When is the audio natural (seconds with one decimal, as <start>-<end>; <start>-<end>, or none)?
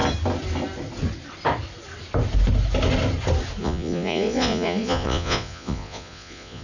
0.0-3.6